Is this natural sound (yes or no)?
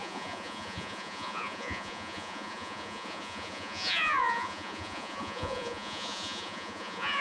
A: no